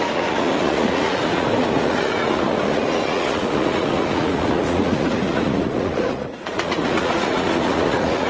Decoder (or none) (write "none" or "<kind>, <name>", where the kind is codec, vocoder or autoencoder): vocoder, Vocos